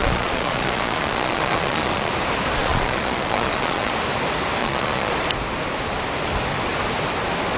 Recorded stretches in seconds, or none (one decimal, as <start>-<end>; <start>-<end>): 2.1-2.6; 3.9-4.6; 5.1-7.6